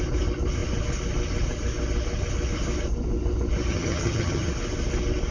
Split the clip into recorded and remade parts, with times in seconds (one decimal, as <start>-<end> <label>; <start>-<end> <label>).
0.0-3.7 recorded; 3.7-4.5 remade; 4.5-5.3 recorded